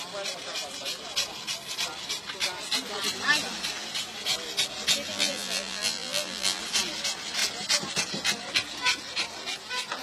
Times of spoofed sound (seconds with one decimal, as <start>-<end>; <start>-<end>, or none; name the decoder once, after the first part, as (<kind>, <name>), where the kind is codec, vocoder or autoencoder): 5.1-6.6 (vocoder, BigVGAN v2)